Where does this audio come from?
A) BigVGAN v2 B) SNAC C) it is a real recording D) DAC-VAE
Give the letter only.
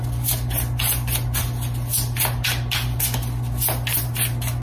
C